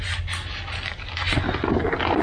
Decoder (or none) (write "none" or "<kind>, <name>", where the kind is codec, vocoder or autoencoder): none